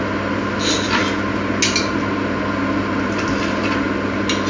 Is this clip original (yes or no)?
yes